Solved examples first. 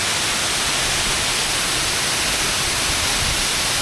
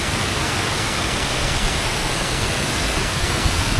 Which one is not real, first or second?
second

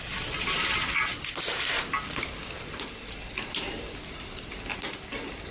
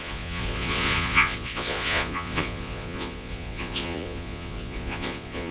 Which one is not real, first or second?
second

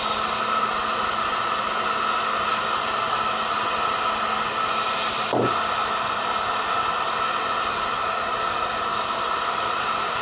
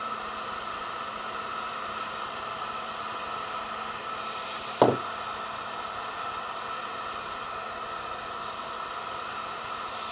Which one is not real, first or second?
second